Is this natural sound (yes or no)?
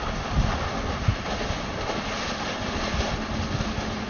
yes